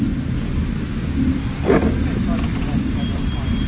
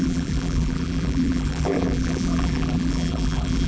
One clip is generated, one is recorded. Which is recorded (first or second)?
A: first